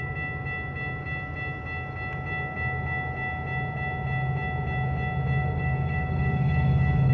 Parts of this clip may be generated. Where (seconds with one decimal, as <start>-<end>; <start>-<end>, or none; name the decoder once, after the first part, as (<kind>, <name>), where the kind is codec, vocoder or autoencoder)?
5.4-7.1 (codec, DAC)